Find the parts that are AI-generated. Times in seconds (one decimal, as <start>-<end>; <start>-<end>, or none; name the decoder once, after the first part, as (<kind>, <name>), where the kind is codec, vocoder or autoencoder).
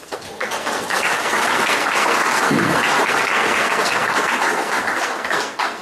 0.0-5.8 (codec, SNAC)